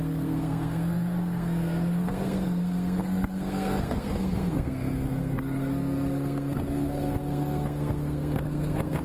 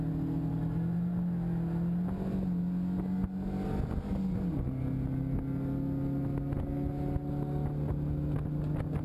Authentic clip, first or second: second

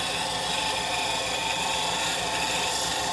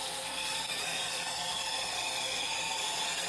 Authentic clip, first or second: first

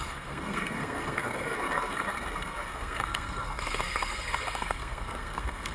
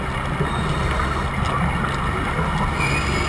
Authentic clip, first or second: second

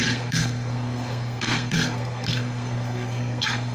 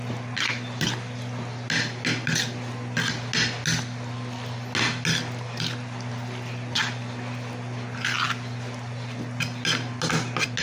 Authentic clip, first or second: second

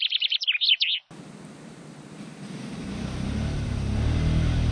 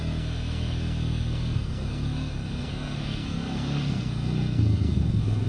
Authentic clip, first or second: first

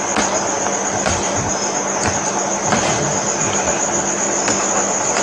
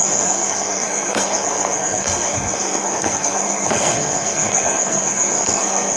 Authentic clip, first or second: first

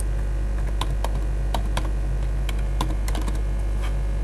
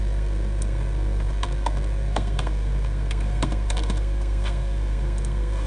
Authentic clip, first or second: first